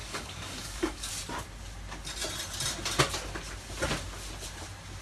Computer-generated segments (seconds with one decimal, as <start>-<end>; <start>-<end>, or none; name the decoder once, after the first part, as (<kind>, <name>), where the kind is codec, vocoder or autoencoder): 0.0-1.1 (codec, DAC)